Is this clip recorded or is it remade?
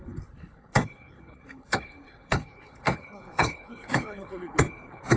remade